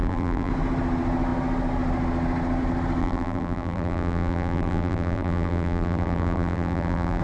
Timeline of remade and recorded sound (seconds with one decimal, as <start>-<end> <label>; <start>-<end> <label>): 0.0-0.5 remade; 0.5-3.0 recorded; 3.0-7.2 remade